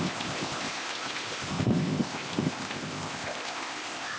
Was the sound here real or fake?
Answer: fake